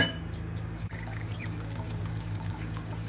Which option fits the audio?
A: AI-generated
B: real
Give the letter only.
A